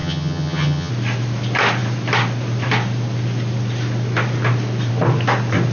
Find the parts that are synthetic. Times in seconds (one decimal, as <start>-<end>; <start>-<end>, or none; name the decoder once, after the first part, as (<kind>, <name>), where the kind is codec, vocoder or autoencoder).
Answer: 0.0-0.9 (vocoder, HiFi-GAN)